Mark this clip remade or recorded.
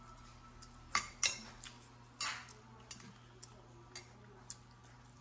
recorded